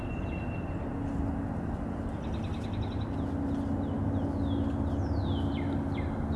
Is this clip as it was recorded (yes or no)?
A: yes